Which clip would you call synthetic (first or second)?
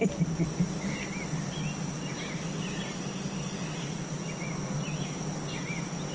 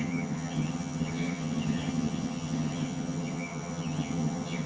second